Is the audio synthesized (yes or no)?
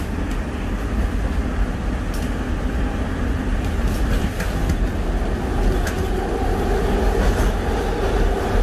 no